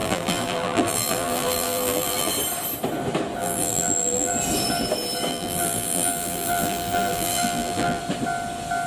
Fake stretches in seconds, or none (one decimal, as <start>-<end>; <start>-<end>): 0.0-2.3; 3.4-4.3; 5.3-8.0